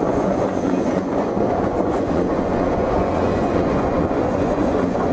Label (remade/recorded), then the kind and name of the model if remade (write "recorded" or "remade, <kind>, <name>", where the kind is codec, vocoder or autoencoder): remade, vocoder, Vocos